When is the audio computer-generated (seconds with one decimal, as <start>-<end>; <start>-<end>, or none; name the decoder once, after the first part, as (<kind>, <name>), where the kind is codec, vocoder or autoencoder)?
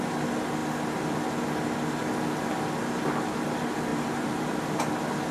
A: 3.9-4.7 (vocoder, BigVGAN v2)